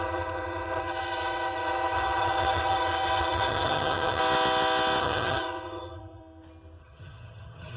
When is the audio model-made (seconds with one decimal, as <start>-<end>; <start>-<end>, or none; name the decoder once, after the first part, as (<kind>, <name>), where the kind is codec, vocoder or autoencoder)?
0.0-4.2 (vocoder, HiFi-GAN); 5.0-6.2; 6.8-7.8